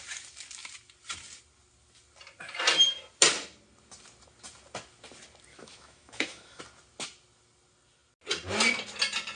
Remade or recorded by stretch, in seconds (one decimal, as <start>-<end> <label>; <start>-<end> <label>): 0.0-5.5 recorded; 5.5-6.6 remade; 6.6-9.4 recorded